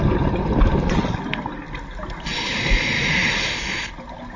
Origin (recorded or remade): recorded